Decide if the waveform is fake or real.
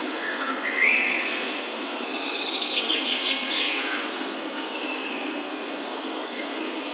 fake